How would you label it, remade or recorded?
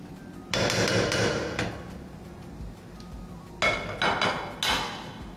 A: recorded